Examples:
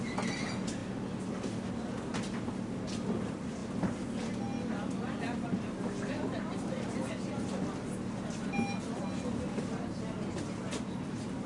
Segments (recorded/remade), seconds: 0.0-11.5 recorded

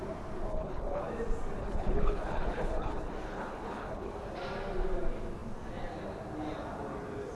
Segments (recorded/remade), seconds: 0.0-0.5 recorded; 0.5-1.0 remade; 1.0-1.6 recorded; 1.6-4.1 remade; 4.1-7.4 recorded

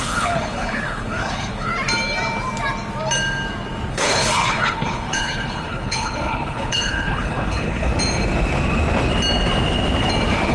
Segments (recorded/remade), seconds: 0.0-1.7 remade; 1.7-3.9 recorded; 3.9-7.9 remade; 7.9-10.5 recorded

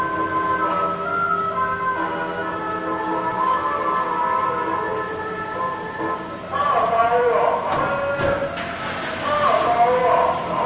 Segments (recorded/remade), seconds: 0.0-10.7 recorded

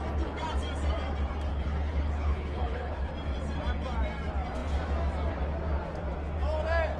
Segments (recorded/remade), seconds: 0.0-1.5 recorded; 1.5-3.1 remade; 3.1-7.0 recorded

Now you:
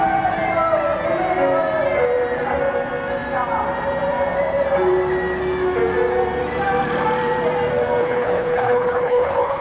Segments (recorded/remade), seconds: 0.0-8.0 recorded; 8.0-9.6 remade

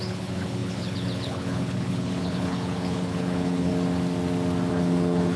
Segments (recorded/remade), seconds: 0.0-3.7 remade; 3.7-4.7 recorded; 4.7-5.4 remade